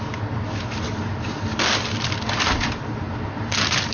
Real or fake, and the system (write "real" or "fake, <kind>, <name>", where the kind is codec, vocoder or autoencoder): real